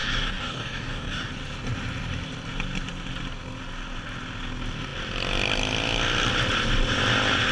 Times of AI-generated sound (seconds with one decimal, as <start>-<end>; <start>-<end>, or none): 0.0-1.3